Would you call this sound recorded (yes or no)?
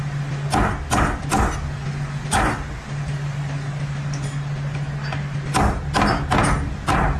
yes